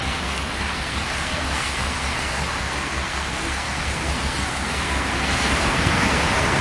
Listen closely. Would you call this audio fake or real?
fake